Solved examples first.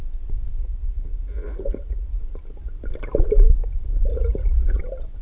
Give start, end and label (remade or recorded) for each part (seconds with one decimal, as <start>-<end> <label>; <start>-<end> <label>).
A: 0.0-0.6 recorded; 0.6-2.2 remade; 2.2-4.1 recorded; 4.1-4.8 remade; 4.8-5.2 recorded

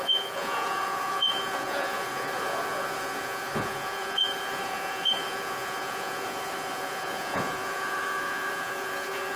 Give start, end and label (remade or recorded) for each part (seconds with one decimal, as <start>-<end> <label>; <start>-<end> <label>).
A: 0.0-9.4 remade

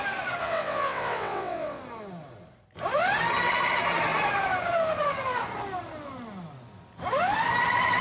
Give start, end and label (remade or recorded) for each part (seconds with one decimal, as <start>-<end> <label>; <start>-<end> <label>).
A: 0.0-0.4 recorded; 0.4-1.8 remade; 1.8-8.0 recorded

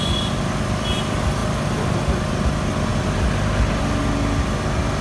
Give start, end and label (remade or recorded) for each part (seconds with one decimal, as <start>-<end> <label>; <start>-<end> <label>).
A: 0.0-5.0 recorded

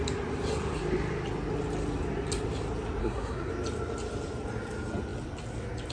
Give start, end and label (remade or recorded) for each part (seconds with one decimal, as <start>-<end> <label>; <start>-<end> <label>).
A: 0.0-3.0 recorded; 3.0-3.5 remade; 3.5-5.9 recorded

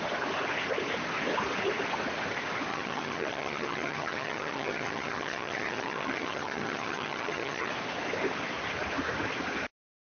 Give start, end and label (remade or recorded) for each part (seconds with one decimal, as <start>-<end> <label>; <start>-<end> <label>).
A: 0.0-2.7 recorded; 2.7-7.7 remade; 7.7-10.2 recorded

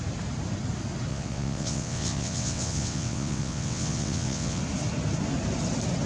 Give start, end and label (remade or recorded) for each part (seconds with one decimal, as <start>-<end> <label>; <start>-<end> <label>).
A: 0.0-1.1 recorded; 1.1-4.6 remade; 4.6-6.1 recorded

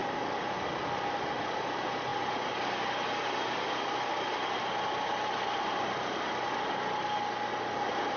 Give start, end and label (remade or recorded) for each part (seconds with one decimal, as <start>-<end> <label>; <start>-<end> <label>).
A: 0.0-8.2 recorded